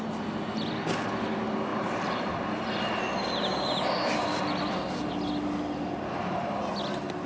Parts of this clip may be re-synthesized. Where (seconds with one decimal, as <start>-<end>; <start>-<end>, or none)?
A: 1.7-2.5